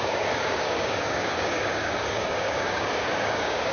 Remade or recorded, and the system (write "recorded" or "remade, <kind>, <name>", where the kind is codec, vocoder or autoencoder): remade, codec, DAC